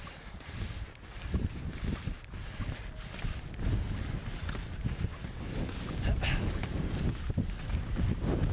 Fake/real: real